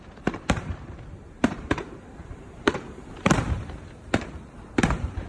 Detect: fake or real fake